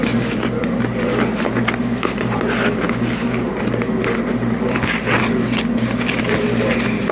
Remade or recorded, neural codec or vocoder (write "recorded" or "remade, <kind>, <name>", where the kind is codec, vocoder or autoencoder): recorded